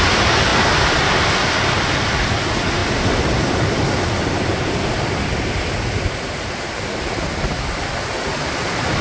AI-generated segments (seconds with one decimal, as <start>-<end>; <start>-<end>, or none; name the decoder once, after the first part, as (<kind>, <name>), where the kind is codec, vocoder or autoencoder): 0.5-1.3 (vocoder, BigVGAN v2); 2.8-5.2